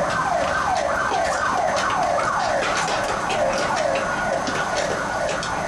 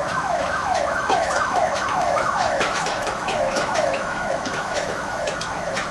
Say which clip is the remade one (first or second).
second